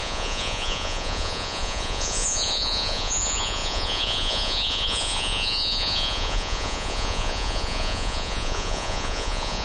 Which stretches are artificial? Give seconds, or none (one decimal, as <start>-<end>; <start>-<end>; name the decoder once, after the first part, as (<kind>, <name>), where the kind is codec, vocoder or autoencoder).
0.0-9.6 (vocoder, Vocos)